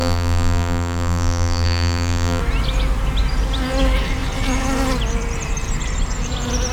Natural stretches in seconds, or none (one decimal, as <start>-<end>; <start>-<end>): 2.4-6.7